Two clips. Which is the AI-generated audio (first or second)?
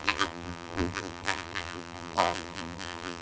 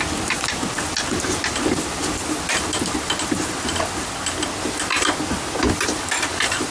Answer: first